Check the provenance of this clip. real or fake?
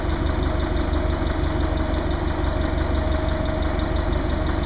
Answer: real